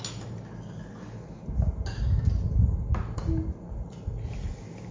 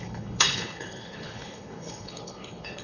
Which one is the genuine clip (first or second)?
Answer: first